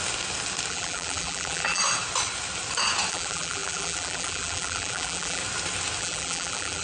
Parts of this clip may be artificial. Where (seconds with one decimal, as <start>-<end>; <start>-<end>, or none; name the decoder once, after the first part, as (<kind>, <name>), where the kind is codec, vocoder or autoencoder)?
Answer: 0.7-1.8 (vocoder, BigVGAN v2); 3.1-5.4; 6.0-6.8